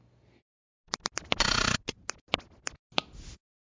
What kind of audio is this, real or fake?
real